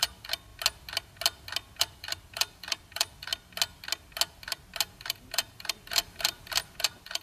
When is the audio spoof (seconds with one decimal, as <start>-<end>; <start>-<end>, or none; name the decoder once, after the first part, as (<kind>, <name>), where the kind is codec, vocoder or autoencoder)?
0.0-0.5 (vocoder, BigVGAN v2); 1.8-3.3; 5.0-7.2